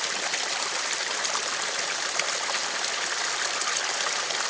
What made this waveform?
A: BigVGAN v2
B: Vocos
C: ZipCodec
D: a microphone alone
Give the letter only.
D